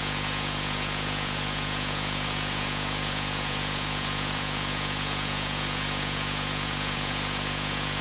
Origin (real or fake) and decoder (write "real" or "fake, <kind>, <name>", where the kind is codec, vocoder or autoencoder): fake, vocoder, Vocos